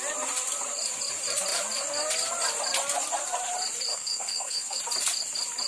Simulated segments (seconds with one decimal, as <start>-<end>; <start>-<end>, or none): 3.9-4.8